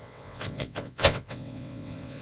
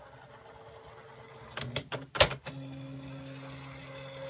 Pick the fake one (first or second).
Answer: first